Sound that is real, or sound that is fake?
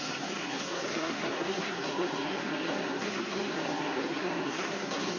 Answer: fake